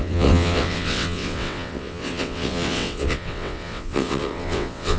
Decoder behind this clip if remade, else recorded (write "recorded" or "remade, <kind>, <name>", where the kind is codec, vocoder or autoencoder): remade, vocoder, WaveNeXt